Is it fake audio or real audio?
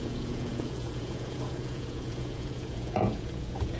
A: fake